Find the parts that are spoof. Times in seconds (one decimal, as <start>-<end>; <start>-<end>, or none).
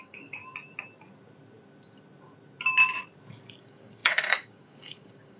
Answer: 0.0-0.4; 3.6-5.4